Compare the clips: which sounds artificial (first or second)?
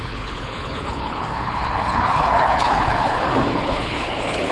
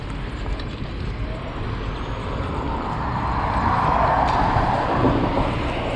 first